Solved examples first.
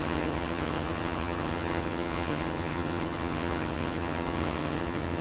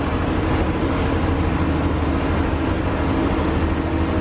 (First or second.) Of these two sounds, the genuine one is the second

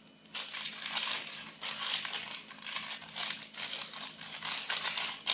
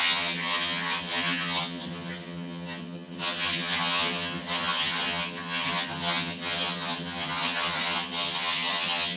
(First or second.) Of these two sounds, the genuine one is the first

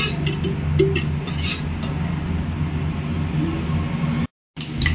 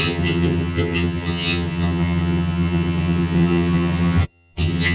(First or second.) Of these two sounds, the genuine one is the first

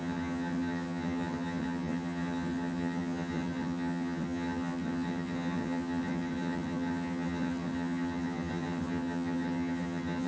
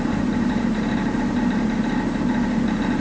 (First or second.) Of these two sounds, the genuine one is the second